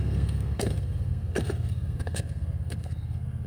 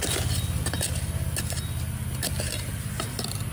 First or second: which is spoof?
first